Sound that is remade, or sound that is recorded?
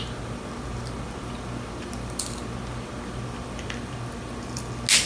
recorded